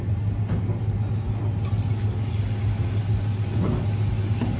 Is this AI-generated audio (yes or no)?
no